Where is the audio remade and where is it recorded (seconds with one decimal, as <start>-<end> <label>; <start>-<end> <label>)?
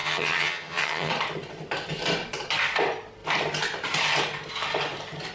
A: 0.0-1.1 remade; 1.1-5.3 recorded